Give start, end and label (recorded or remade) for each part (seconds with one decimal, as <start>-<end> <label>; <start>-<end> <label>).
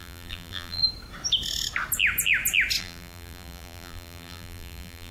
0.0-0.8 remade; 0.8-2.8 recorded; 2.8-5.1 remade